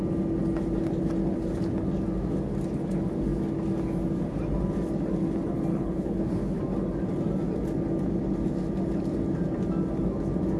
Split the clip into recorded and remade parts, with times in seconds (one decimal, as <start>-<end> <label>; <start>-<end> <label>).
0.0-5.7 recorded; 5.7-6.6 remade; 6.6-10.6 recorded